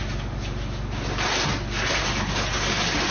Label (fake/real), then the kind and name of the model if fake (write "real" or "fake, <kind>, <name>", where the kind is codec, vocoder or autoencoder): real